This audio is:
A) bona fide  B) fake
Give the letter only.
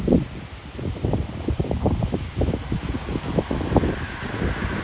B